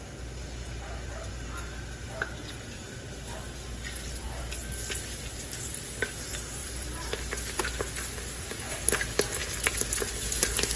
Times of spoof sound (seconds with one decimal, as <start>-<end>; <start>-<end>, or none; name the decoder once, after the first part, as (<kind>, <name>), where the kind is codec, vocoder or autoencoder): 6.6-7.6 (vocoder, BigVGAN v2)